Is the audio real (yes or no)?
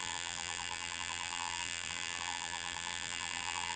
no